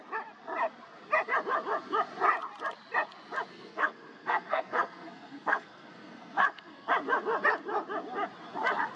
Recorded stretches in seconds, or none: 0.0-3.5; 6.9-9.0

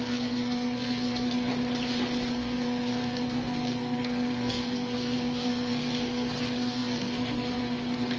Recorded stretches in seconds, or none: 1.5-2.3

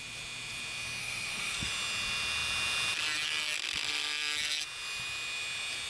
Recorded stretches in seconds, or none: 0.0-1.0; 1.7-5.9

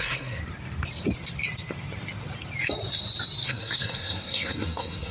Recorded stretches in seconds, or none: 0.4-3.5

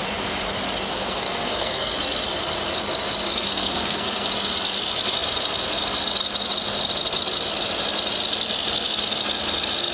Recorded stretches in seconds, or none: 0.0-0.9; 1.9-3.3; 4.3-9.9

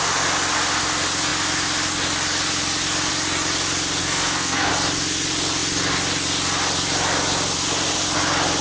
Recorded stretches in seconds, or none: 0.0-4.0; 4.7-8.6

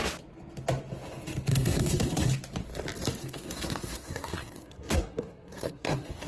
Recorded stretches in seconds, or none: 0.0-1.5; 2.3-3.2